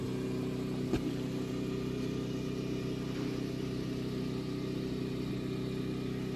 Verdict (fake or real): real